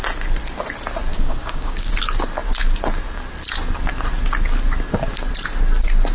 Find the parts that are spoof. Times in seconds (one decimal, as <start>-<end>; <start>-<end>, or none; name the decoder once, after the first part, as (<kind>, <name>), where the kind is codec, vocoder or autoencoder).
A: 1.1-1.9 (codec, DAC)

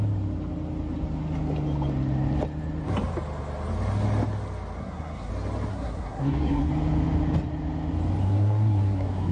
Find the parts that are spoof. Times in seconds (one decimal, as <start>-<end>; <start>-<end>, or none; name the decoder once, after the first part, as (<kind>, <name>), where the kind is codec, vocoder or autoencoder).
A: 4.8-5.3 (codec, SNAC); 5.7-6.7; 8.2-9.3

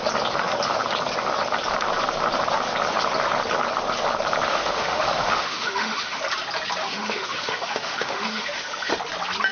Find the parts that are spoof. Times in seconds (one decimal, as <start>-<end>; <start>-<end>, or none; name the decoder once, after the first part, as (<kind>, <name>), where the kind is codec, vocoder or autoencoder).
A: 4.5-6.2 (autoencoder, DAC-VAE); 6.8-8.9

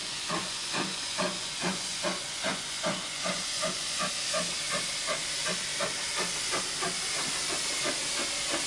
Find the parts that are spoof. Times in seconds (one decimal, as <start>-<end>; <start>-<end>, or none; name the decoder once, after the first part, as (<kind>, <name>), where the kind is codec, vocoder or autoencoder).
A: 0.0-4.1 (vocoder, Vocos)

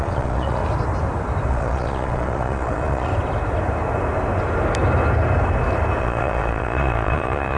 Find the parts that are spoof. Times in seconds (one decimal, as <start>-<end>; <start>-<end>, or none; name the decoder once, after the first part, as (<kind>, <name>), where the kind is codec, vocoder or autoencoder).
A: 0.0-0.6 (vocoder, Vocos); 1.5-3.1; 6.0-7.6

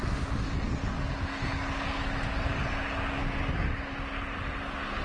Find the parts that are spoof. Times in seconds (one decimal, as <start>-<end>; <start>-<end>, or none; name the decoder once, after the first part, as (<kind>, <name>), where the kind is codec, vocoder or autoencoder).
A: none